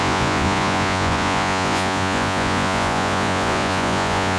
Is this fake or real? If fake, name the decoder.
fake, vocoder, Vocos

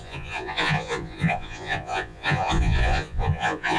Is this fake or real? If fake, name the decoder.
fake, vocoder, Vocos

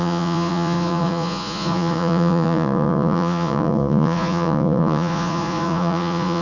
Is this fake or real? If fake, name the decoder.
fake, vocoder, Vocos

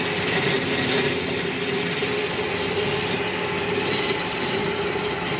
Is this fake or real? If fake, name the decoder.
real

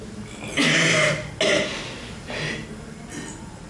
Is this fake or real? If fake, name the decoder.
real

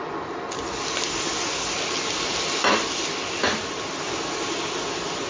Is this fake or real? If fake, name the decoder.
real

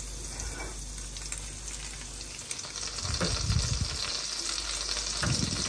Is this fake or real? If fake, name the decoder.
real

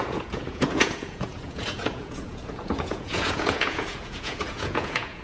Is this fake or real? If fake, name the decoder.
fake, vocoder, Vocos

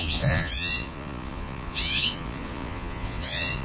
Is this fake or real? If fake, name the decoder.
fake, vocoder, Vocos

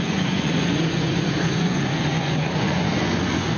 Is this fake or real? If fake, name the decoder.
fake, vocoder, Vocos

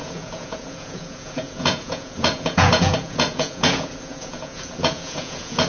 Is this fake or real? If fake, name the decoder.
fake, vocoder, Vocos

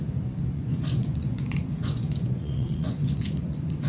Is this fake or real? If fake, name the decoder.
fake, vocoder, Vocos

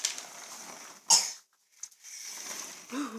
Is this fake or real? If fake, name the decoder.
real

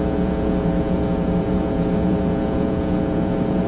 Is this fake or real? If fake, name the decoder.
fake, vocoder, Vocos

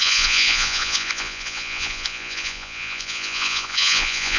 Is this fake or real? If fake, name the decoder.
fake, vocoder, Vocos